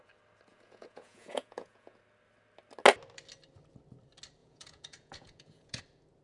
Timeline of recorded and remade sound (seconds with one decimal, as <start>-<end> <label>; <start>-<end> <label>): 0.0-0.5 recorded; 0.5-2.0 remade; 2.0-4.4 recorded; 4.4-5.8 remade; 5.8-6.2 recorded